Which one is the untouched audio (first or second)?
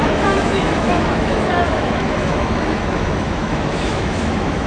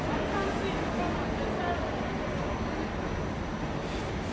second